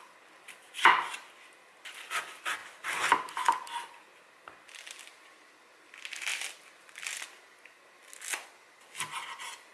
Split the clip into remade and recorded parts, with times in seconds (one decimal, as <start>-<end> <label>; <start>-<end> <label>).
0.0-9.7 recorded